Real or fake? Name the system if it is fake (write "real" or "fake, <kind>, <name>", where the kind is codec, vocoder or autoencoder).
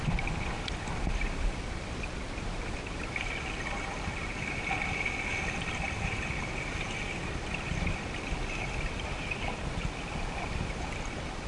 real